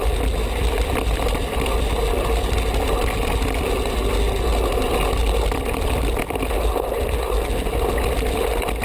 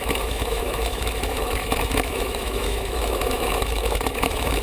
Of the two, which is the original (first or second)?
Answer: first